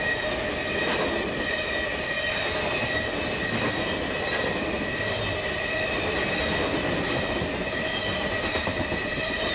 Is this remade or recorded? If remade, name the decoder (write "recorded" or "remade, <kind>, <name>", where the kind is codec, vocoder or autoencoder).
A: recorded